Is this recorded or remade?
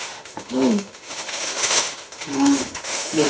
remade